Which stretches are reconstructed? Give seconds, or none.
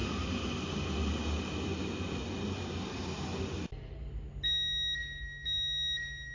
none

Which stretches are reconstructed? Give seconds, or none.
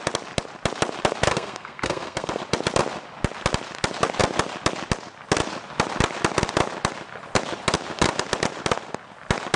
1.3-2.4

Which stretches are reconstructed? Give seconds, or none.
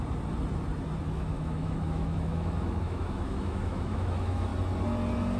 1.0-4.5